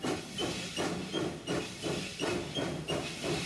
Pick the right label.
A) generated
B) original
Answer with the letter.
B